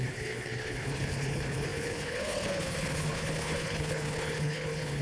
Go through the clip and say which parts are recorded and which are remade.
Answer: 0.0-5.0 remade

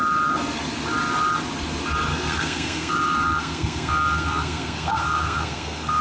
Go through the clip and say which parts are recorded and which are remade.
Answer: 0.0-2.1 recorded; 2.1-6.0 remade

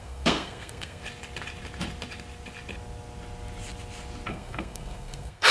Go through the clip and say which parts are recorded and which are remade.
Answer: 0.0-1.0 remade; 1.0-4.3 recorded; 4.3-5.5 remade

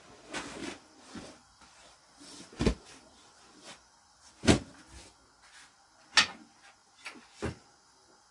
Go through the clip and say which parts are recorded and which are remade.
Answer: 0.0-0.6 recorded; 0.6-4.8 remade; 4.8-8.3 recorded

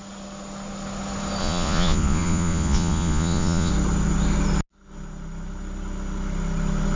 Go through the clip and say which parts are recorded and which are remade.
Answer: 0.0-1.4 recorded; 1.4-3.7 remade; 3.7-7.0 recorded

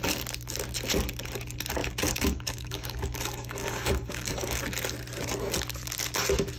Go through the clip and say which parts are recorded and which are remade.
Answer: 0.0-1.8 recorded; 1.8-4.6 remade; 4.6-6.6 recorded

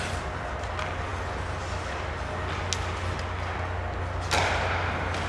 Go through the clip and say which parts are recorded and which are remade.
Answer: 0.0-5.3 recorded